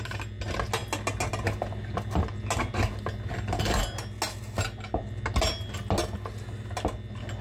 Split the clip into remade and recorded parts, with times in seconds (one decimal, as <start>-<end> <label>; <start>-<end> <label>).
0.0-7.4 recorded